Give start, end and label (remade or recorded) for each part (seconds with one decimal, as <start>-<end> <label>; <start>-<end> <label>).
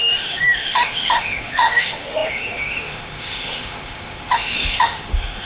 0.0-5.5 remade